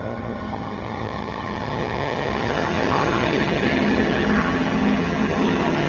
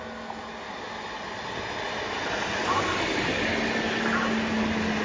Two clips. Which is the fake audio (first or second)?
first